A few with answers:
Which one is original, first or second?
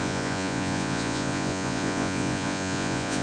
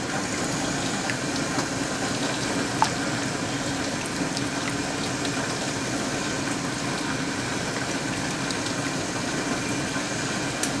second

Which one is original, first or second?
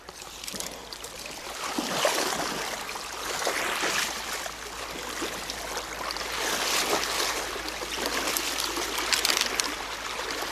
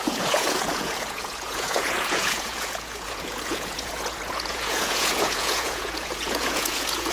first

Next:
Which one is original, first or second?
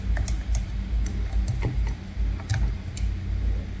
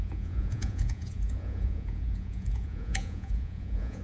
first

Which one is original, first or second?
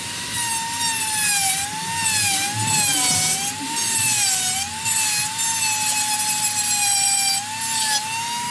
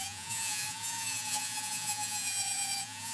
first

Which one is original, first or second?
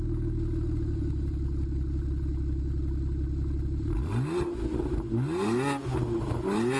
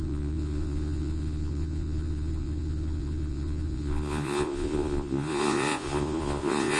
first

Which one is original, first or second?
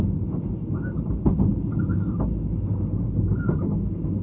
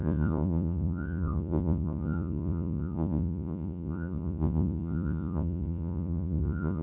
first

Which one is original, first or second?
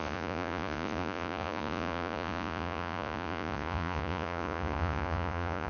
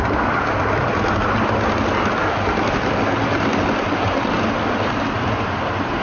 second